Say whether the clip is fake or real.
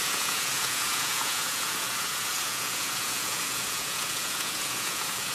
fake